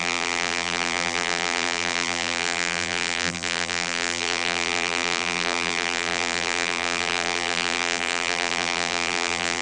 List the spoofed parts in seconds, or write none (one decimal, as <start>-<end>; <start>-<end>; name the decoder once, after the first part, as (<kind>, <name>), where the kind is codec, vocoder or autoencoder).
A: 0.0-9.6 (vocoder, BigVGAN v2)